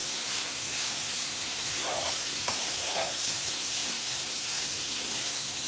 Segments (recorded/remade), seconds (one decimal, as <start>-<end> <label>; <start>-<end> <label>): 0.0-5.7 remade